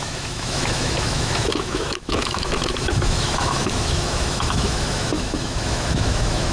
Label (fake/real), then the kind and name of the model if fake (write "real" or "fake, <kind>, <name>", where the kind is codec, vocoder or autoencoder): fake, autoencoder, DAC-VAE